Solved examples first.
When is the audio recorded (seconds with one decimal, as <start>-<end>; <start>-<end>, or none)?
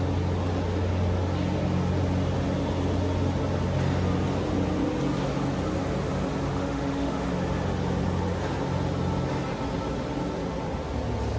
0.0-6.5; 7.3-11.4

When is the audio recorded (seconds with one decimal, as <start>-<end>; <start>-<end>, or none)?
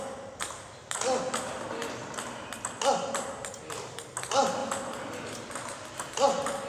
0.0-6.7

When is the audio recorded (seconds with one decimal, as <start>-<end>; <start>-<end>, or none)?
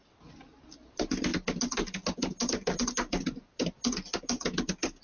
0.0-5.0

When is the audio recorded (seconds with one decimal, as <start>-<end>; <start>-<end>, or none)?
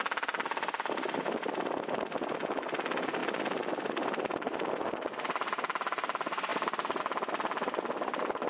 0.0-8.5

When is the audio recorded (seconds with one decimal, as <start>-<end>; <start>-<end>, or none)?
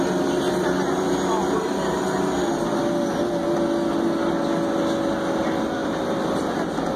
0.0-7.0